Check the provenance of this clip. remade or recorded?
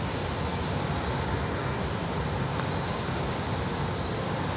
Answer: recorded